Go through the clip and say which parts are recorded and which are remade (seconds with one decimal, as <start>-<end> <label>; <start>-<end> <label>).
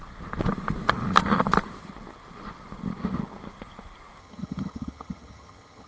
0.0-4.2 recorded; 4.2-5.9 remade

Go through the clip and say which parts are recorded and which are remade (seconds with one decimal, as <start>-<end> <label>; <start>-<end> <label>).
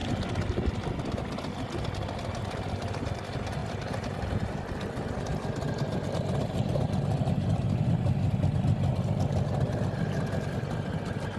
0.0-3.6 recorded; 3.6-4.4 remade; 4.4-11.4 recorded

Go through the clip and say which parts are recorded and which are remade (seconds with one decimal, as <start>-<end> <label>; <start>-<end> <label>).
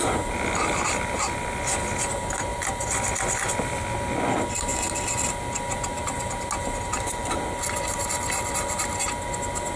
0.0-9.8 recorded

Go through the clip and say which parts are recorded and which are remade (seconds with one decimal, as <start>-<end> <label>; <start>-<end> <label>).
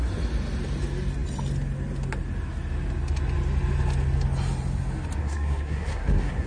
0.0-5.2 recorded; 5.2-6.5 remade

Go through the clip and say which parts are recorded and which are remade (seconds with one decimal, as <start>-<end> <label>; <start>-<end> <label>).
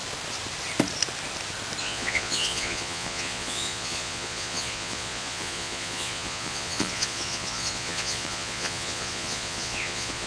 0.0-1.8 recorded; 1.8-10.3 remade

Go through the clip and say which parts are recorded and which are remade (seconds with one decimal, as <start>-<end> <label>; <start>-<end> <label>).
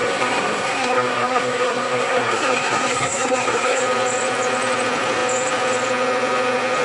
0.0-3.8 remade; 3.8-6.8 recorded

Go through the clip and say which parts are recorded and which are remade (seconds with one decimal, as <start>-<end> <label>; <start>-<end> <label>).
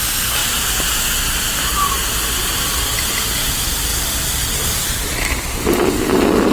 0.0-6.5 recorded